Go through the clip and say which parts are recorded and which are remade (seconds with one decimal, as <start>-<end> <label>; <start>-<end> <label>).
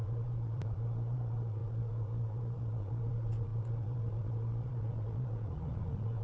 0.0-6.2 remade